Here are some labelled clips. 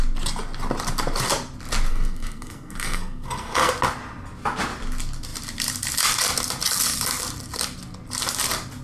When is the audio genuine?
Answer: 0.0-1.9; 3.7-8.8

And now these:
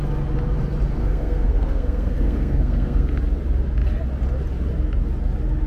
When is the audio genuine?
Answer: 0.0-1.0; 3.2-5.7

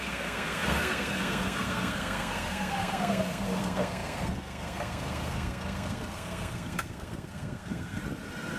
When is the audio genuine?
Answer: 8.0-8.6

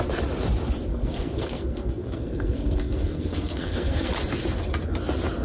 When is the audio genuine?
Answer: 0.0-0.9; 4.1-5.4

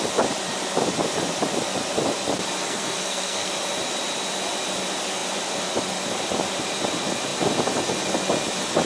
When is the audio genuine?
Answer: 0.0-2.6; 3.5-8.9

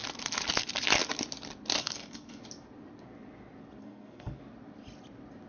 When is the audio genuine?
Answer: 0.0-1.8; 2.4-3.8; 4.4-5.5

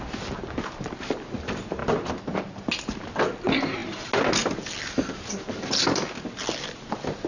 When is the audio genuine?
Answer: 0.0-7.3